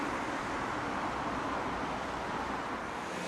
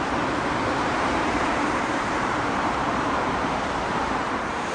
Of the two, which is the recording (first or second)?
first